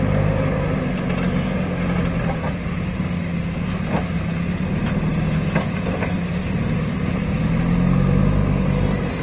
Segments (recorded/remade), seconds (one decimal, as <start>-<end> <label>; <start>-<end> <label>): 0.0-9.2 recorded